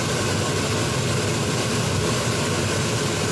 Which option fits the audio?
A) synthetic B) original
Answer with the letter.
B